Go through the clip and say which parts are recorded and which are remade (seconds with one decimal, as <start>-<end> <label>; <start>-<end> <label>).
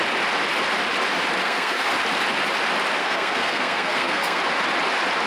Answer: 0.0-1.4 recorded; 1.4-1.9 remade; 1.9-3.0 recorded; 3.0-4.4 remade; 4.4-5.3 recorded